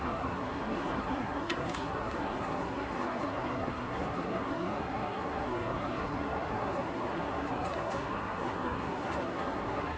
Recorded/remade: remade